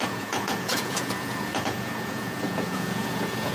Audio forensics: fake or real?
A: fake